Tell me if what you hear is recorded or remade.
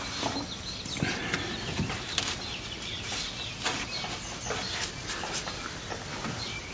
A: recorded